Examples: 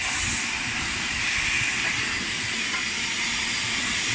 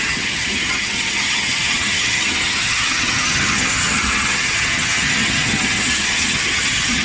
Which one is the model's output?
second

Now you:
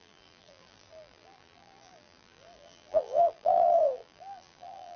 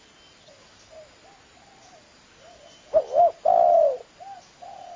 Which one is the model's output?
first